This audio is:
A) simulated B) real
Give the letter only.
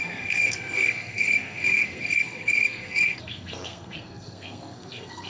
A